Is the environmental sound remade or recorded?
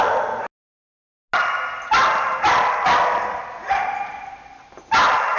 recorded